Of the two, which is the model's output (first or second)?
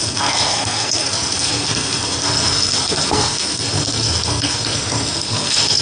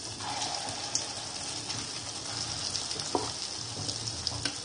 first